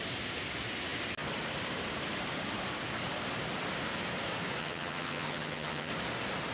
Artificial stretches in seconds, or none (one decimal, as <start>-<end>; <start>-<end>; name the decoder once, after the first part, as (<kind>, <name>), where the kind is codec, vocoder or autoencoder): 4.6-5.9 (vocoder, HiFi-GAN)